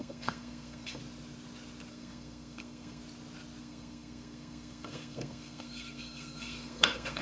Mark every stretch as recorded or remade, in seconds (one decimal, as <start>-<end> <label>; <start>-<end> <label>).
0.0-1.0 remade; 1.0-1.9 recorded; 1.9-3.0 remade; 3.0-3.6 recorded; 3.6-7.2 remade